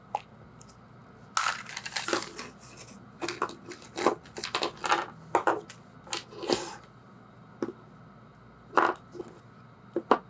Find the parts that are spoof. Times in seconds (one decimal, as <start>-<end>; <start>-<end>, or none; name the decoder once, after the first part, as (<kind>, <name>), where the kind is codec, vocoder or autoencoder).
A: none